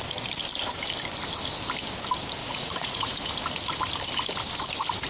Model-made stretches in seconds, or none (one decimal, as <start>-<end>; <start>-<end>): 2.4-3.3